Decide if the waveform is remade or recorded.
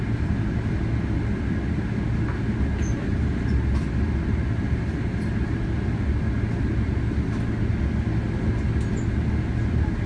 recorded